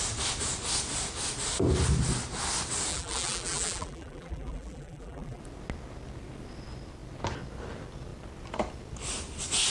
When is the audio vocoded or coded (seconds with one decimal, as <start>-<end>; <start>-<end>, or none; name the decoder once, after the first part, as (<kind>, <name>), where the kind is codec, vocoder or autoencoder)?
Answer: 2.9-5.4 (vocoder, BigVGAN v2)